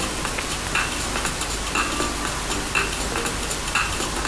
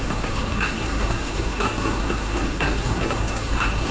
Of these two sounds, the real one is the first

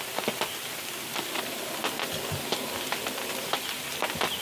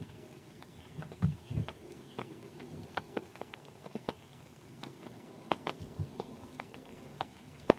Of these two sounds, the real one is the first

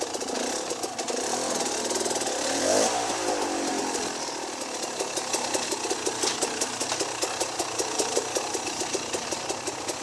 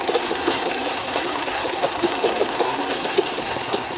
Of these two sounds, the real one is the first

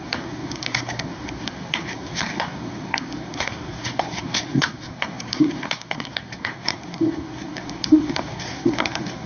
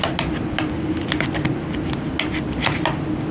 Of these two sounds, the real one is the second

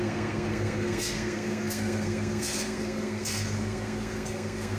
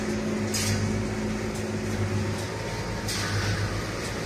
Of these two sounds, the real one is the second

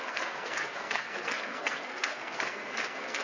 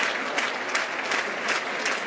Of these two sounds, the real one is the second